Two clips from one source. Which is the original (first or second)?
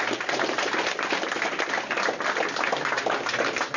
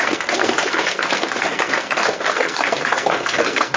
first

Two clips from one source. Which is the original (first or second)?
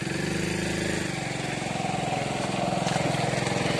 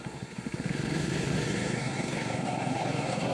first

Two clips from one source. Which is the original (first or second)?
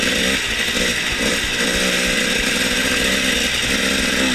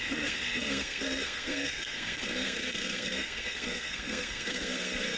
first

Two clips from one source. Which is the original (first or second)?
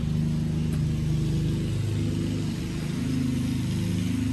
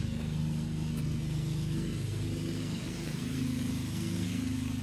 first